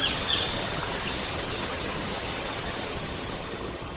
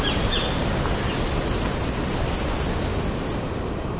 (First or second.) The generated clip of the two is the first